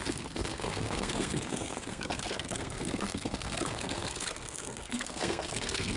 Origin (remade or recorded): remade